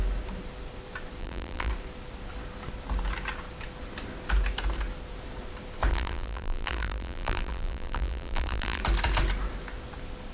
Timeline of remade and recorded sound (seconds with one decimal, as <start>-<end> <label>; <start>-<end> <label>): 0.0-1.2 recorded; 1.2-1.7 remade; 1.7-5.9 recorded; 5.9-8.8 remade; 8.8-10.3 recorded